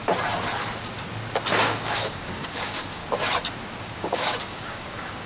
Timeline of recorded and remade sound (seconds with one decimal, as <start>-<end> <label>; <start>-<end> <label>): 0.0-1.6 recorded; 1.6-3.0 remade; 3.0-3.8 recorded; 3.8-5.3 remade